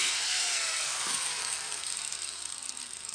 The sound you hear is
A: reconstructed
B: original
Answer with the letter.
A